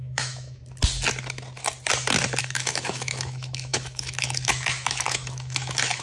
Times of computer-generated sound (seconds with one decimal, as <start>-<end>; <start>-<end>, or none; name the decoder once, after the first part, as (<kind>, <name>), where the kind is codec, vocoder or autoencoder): 0.0-0.6 (autoencoder, DAC-VAE); 2.4-6.0